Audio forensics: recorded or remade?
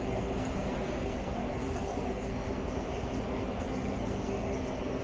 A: remade